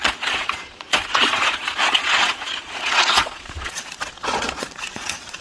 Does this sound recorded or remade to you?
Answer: remade